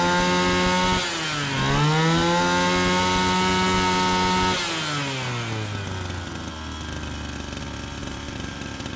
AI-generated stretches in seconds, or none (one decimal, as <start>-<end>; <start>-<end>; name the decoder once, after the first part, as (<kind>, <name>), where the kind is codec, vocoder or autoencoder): 8.0-9.0 (vocoder, BigVGAN v2)